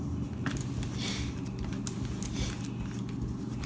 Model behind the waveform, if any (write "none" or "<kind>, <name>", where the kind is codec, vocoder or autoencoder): none